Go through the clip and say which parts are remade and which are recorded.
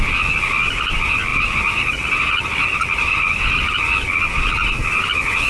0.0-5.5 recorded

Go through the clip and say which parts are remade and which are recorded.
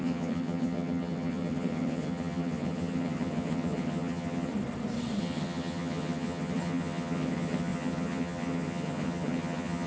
0.0-4.5 remade; 4.5-5.2 recorded; 5.2-9.9 remade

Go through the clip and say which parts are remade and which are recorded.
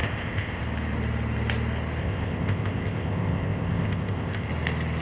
0.0-0.6 remade; 0.6-2.0 recorded; 2.0-4.5 remade; 4.5-5.0 recorded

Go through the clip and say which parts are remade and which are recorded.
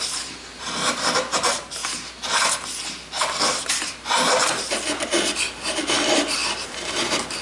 0.0-1.8 remade; 1.8-3.8 recorded; 3.8-7.4 remade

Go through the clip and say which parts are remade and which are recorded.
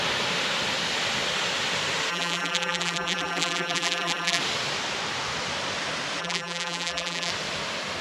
0.0-2.1 recorded; 2.1-4.4 remade; 4.4-6.2 recorded; 6.2-7.3 remade; 7.3-8.0 recorded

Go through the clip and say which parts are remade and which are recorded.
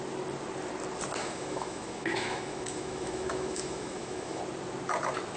0.0-1.2 recorded; 1.2-4.4 remade; 4.4-5.4 recorded